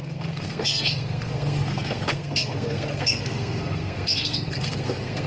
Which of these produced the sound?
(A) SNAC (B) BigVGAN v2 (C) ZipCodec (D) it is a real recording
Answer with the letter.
A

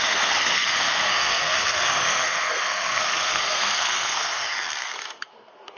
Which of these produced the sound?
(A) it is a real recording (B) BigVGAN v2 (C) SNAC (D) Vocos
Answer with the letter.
C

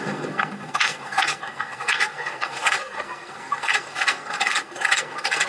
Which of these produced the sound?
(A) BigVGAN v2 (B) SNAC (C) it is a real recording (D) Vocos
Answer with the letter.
B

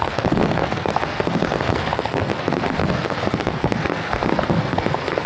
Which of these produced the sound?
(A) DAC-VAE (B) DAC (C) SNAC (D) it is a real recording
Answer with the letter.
C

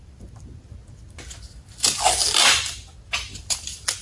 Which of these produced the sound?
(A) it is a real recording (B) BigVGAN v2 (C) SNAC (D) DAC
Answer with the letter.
A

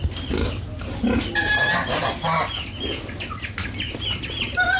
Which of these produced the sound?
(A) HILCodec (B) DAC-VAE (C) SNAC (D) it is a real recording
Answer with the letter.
D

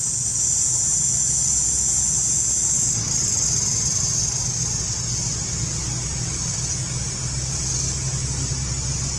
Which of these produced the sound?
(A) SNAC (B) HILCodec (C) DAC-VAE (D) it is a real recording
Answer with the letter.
D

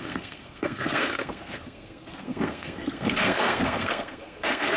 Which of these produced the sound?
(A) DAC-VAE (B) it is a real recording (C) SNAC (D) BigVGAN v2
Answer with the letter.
C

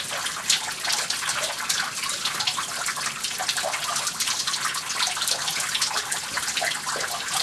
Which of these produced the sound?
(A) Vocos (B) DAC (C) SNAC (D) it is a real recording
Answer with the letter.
D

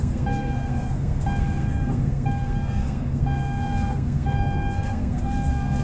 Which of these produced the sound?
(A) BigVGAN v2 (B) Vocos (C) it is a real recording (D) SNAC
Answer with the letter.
D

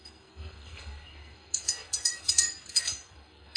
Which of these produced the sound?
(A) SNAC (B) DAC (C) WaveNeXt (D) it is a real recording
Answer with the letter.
A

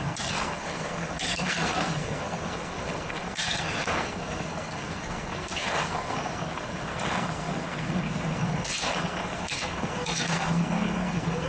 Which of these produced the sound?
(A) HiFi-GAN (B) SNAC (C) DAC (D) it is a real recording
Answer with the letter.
B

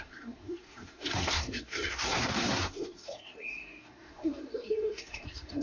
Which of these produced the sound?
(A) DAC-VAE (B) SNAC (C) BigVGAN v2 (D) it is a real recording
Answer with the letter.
B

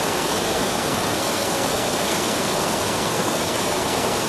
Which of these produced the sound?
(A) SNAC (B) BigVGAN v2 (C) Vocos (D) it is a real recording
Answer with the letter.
A